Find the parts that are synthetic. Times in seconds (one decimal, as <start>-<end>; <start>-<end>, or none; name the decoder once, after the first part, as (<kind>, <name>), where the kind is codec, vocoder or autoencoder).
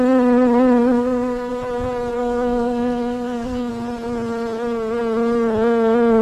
0.8-1.5 (codec, SNAC); 2.1-3.7